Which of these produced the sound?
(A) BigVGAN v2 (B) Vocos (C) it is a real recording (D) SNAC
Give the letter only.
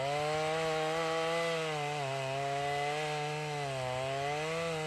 C